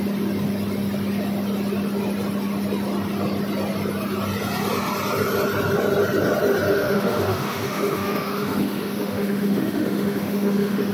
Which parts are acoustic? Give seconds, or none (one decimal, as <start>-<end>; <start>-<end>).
0.0-6.7